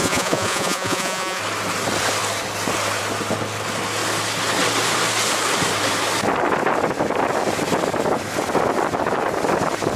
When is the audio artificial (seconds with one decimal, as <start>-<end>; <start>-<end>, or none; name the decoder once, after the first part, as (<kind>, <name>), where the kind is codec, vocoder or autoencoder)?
0.0-1.4 (vocoder, Vocos)

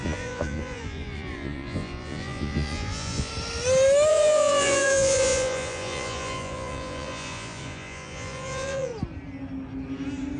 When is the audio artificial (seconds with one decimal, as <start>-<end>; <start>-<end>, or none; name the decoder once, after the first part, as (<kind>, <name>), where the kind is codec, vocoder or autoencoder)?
0.0-3.3 (vocoder, Vocos); 4.1-8.9

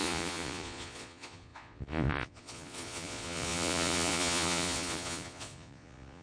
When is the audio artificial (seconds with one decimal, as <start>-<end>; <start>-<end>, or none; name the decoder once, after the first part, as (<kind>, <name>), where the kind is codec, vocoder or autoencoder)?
0.0-6.2 (vocoder, Vocos)

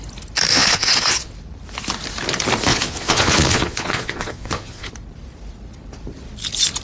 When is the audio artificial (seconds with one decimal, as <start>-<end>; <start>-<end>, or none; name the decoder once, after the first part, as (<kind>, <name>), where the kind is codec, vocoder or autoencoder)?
0.5-1.3 (vocoder, Vocos); 2.7-4.9

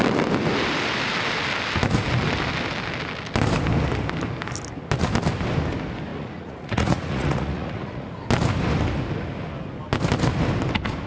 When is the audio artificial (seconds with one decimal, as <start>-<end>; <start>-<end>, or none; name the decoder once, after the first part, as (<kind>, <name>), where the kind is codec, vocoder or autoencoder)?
6.1-8.1 (vocoder, Vocos)

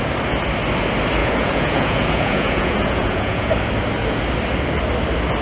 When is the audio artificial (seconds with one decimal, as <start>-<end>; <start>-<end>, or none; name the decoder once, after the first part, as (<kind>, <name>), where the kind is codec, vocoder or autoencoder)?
1.2-3.5 (vocoder, Vocos)

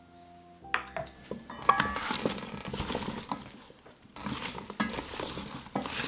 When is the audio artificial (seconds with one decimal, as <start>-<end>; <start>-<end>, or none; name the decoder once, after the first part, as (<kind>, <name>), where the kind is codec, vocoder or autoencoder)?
none

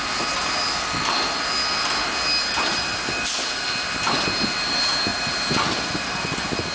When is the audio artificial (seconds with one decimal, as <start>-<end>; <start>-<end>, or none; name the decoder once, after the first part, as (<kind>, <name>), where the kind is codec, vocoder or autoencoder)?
none